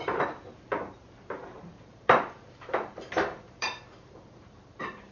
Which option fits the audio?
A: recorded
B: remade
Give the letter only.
B